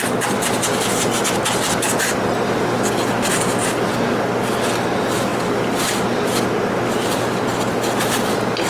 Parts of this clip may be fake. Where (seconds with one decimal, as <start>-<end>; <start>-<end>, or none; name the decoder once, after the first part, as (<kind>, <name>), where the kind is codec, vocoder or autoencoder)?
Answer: none